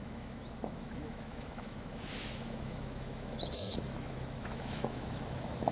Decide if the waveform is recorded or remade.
remade